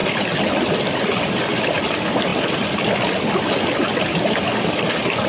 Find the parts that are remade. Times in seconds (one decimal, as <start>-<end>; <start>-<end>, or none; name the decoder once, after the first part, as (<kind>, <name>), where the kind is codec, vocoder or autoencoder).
none